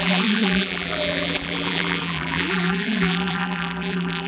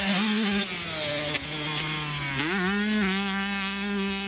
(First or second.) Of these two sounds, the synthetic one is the first